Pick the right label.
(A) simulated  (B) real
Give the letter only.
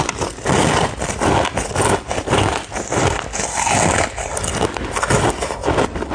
B